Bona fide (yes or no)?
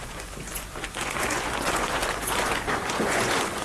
no